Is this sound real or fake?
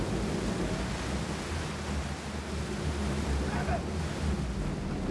real